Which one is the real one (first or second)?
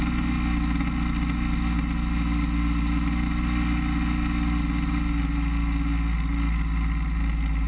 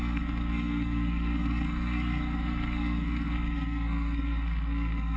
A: first